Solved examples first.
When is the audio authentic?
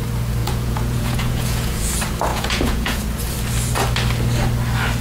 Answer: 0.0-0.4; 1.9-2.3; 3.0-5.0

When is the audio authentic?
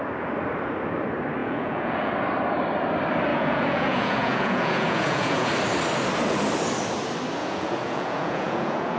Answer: 0.0-1.4; 2.1-3.3; 5.5-7.4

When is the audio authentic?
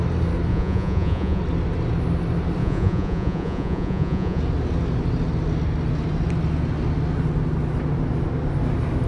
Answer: 0.0-0.5; 1.4-2.6; 4.4-9.1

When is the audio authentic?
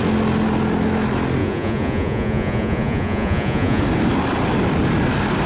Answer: 0.0-1.4; 3.8-5.5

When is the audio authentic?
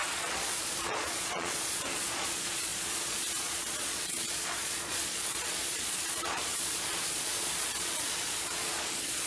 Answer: none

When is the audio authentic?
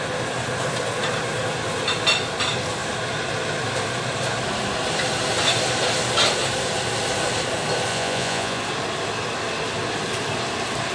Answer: 0.0-7.9; 8.6-10.9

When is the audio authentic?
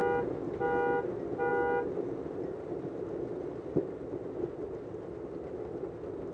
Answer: 0.0-6.3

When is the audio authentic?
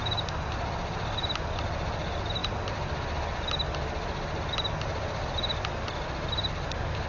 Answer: 0.0-7.1